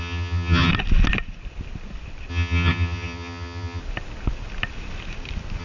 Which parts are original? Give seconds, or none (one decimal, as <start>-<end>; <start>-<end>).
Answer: 0.7-2.3; 3.8-5.6

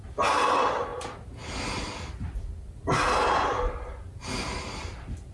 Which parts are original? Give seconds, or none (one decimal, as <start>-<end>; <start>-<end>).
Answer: 0.0-5.3

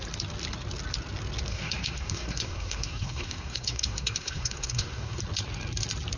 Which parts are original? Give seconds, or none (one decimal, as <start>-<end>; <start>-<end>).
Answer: 0.0-1.5; 5.2-6.2

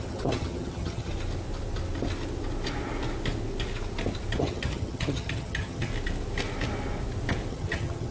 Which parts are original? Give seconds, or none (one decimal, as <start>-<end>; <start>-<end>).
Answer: 1.1-4.4; 5.9-7.5